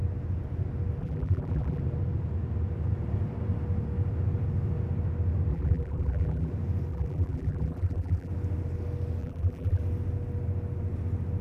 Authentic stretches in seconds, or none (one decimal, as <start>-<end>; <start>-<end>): 0.0-1.0; 1.8-5.5; 6.5-6.9; 8.3-9.2; 9.8-11.4